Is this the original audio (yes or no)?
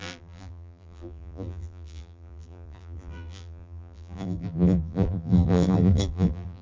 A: no